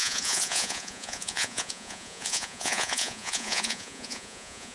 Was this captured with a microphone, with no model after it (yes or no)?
no